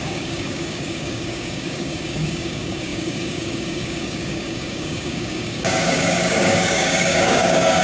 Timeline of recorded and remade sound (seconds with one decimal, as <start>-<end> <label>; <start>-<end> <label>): 0.0-7.8 remade